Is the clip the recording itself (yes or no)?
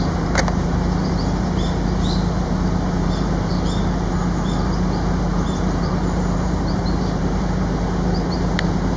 no